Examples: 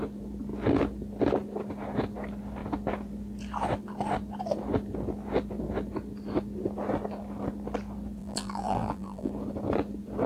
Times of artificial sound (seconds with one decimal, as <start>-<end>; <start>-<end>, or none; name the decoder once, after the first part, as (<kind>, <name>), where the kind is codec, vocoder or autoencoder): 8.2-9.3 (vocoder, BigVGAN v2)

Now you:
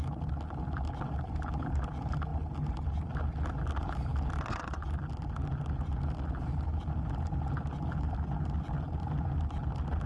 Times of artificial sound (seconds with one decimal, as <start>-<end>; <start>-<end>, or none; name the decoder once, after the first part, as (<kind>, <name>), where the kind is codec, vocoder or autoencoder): none

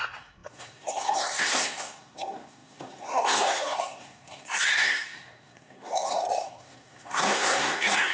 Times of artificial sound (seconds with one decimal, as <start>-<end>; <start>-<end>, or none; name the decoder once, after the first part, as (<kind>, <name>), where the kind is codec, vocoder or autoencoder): 0.0-8.1 (codec, SNAC)